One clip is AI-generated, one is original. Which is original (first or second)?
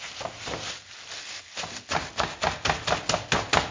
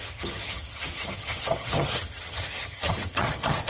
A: first